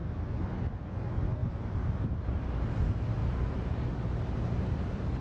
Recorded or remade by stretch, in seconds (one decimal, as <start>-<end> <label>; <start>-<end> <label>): 0.0-1.4 recorded; 1.4-2.8 remade; 2.8-3.2 recorded; 3.2-3.9 remade; 3.9-5.2 recorded